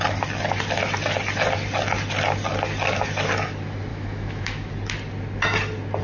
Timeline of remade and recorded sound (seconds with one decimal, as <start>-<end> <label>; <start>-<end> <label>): 0.0-3.9 recorded; 3.9-4.7 remade; 4.7-6.0 recorded